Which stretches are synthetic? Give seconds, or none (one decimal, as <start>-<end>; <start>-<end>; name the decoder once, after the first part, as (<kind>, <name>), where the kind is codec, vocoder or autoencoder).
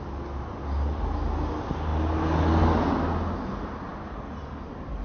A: none